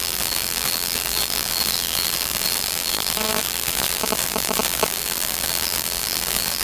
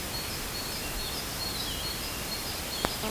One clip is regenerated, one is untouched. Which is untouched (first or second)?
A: second